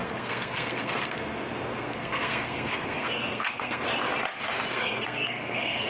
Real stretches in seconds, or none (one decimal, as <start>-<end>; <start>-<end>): 3.9-4.7